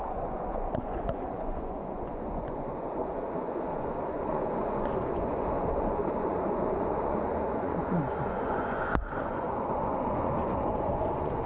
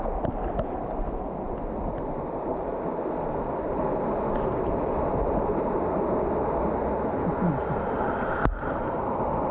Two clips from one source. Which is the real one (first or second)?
second